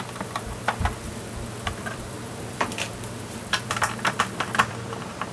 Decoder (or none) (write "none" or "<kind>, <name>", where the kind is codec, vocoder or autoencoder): vocoder, BigVGAN v2